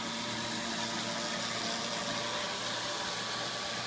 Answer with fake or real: real